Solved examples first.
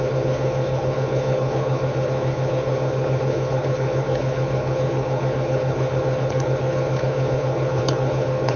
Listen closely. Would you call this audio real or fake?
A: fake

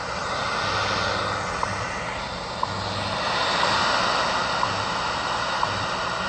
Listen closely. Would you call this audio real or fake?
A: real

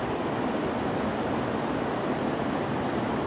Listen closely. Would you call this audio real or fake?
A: real